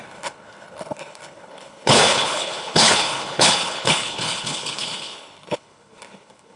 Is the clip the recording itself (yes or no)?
no